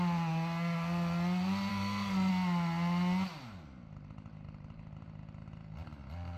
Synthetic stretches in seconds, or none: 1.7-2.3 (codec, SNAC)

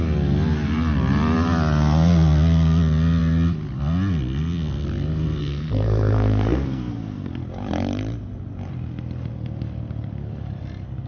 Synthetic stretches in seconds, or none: 5.4-7.3 (codec, SNAC)

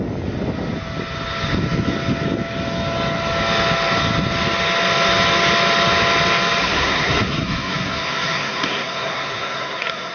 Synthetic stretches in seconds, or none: 6.6-10.1 (codec, SNAC)

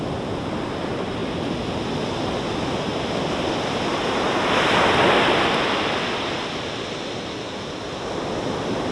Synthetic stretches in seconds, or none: none

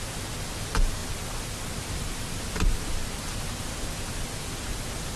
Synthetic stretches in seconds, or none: none

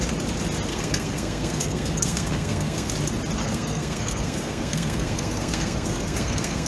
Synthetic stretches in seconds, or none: 0.7-2.9 (codec, SNAC); 3.4-6.7

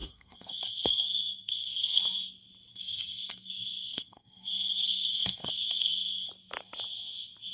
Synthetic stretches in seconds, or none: 0.0-2.0 (codec, SNAC); 2.7-6.3